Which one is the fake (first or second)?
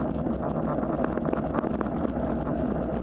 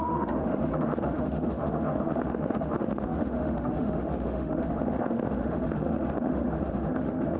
second